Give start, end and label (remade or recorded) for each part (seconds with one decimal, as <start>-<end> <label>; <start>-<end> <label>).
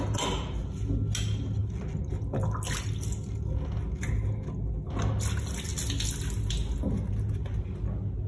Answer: 0.0-8.3 recorded